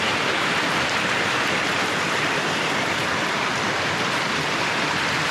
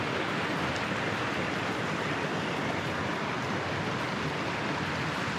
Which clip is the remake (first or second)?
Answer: first